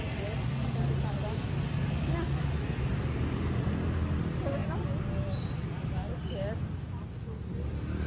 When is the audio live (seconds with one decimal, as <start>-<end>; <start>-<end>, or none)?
0.0-8.1